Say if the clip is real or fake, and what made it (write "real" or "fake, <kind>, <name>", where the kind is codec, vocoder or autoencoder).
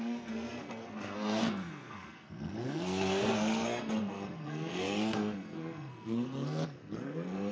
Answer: fake, codec, SNAC